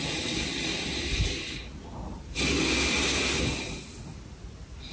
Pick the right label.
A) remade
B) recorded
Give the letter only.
B